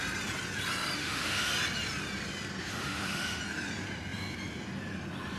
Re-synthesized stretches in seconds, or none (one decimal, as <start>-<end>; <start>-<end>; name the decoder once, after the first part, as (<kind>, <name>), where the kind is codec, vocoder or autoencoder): 1.0-1.5 (autoencoder, DAC-VAE); 2.6-3.4